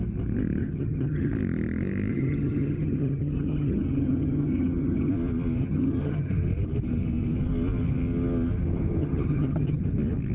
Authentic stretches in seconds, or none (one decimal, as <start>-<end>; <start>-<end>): 0.0-0.6; 1.3-2.1; 5.1-5.6; 6.3-9.0; 9.8-10.3